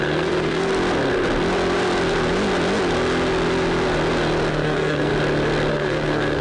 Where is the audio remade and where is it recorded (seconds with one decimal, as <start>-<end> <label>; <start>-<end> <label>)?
0.0-0.7 remade; 0.7-4.5 recorded; 4.5-5.1 remade; 5.1-5.7 recorded; 5.7-6.4 remade